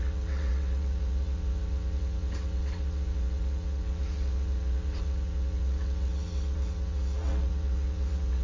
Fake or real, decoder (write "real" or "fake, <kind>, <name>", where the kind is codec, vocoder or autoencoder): fake, vocoder, WaveNeXt